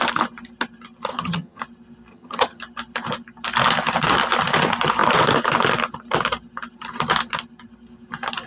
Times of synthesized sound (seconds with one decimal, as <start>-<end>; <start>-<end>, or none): 1.1-1.6; 2.1-2.6

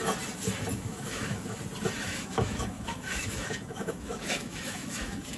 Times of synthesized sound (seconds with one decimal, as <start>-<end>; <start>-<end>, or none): 0.7-1.6; 2.0-5.4